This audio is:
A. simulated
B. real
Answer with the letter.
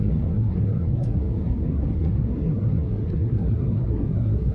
A